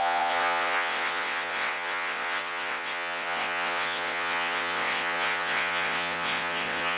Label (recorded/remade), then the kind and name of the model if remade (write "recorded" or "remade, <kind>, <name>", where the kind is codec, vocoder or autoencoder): remade, vocoder, WaveNeXt